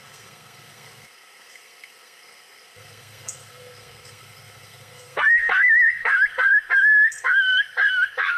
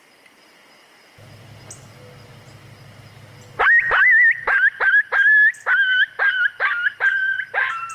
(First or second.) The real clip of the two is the second